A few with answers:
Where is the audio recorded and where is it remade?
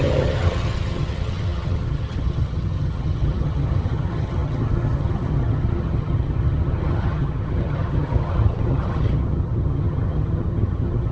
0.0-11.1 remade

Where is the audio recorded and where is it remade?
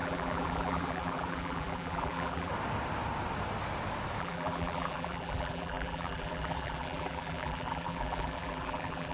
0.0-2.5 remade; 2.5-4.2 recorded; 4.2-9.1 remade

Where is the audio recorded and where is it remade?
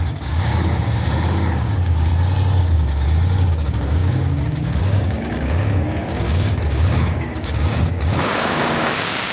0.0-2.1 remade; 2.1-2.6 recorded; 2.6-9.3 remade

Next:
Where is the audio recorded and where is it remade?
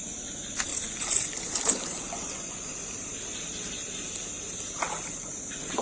0.0-2.8 remade; 2.8-5.1 recorded; 5.1-5.8 remade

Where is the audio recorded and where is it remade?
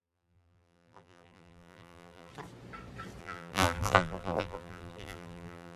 0.0-2.3 remade; 2.3-3.2 recorded; 3.2-5.8 remade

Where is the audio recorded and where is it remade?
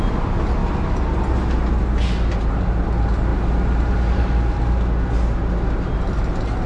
0.0-6.7 recorded